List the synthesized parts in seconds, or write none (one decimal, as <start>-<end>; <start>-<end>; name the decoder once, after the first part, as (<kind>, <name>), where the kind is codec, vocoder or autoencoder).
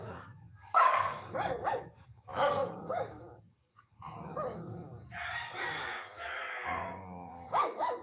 0.0-8.0 (codec, DAC)